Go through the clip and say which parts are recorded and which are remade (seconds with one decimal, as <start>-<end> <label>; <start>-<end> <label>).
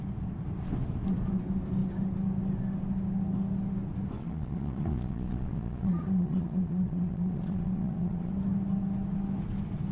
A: 0.0-4.2 recorded; 4.2-8.3 remade; 8.3-9.9 recorded